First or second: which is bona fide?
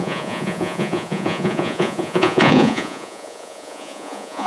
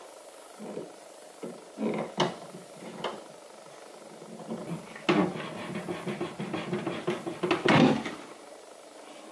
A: second